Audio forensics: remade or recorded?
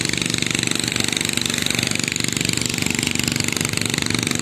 recorded